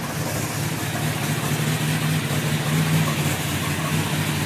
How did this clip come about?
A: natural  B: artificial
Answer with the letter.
A